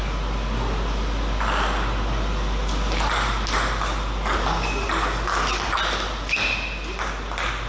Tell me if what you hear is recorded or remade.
recorded